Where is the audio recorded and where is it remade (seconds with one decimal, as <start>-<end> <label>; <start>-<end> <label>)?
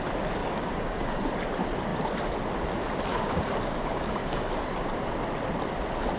0.0-0.4 recorded; 0.4-1.2 remade; 1.2-3.1 recorded; 3.1-4.6 remade; 4.6-6.2 recorded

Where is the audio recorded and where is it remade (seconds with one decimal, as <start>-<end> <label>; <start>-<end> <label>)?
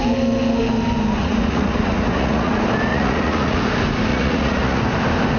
0.0-1.2 recorded; 1.2-2.5 remade; 2.5-2.9 recorded; 2.9-3.6 remade; 3.6-4.1 recorded; 4.1-4.8 remade; 4.8-5.4 recorded